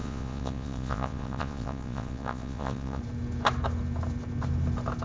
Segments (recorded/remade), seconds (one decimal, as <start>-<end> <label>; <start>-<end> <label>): 0.0-3.0 remade; 3.0-5.0 recorded